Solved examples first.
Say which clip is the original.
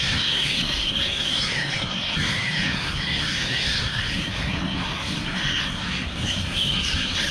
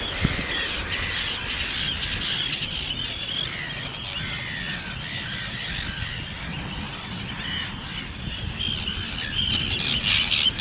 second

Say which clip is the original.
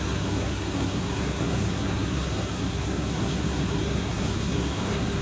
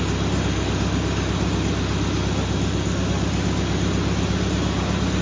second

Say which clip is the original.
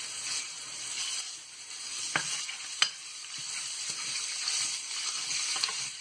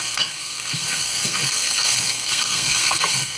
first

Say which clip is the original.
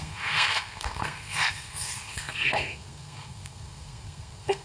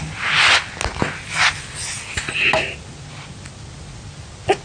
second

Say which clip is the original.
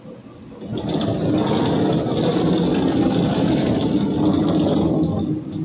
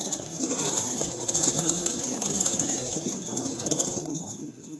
first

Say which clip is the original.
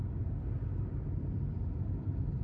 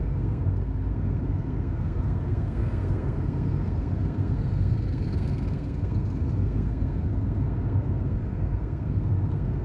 first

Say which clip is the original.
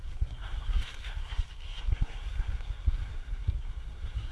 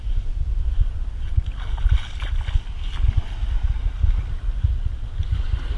second